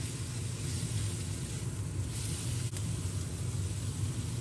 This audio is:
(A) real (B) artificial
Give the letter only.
A